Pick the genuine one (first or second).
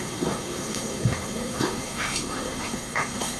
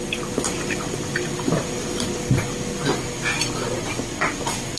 second